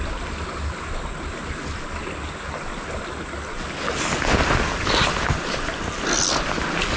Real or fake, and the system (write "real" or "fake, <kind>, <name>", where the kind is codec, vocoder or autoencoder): real